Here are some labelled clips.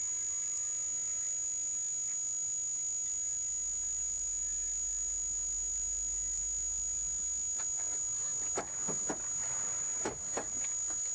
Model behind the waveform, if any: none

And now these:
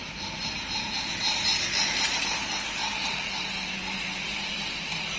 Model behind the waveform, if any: vocoder, BigVGAN v2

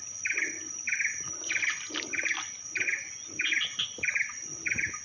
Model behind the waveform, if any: none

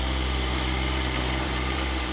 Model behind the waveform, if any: vocoder, BigVGAN v2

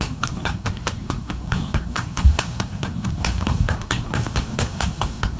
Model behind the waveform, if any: codec, SNAC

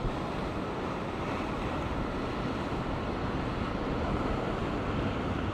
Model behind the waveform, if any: none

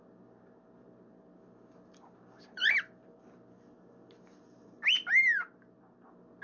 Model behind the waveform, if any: none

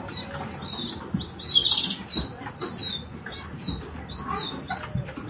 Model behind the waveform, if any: none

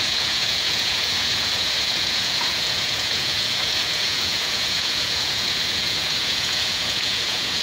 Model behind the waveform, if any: vocoder, Vocos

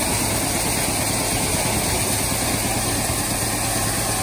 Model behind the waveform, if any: none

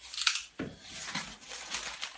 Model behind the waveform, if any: none